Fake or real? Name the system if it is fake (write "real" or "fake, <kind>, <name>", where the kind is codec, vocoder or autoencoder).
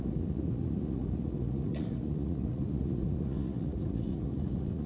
fake, vocoder, Vocos